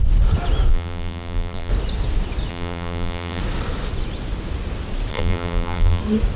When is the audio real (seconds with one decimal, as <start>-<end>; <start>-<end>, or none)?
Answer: 0.0-0.7; 1.7-2.5; 3.4-5.1; 6.0-6.4